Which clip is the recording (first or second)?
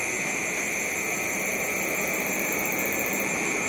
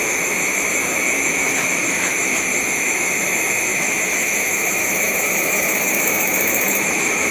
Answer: first